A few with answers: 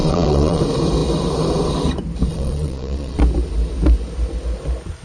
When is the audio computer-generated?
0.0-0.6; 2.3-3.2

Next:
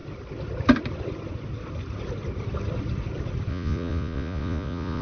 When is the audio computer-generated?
3.5-5.0

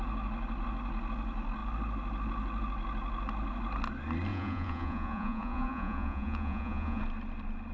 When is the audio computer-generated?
4.3-7.0